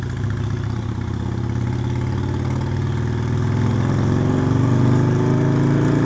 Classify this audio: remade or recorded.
recorded